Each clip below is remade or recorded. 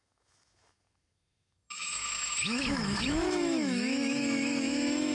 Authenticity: remade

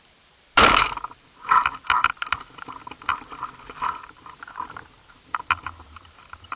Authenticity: recorded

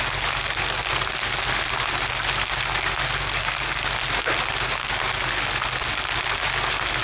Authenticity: recorded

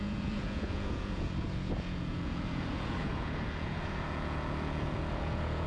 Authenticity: remade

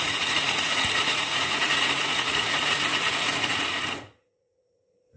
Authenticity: remade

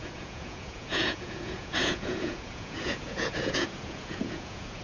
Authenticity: remade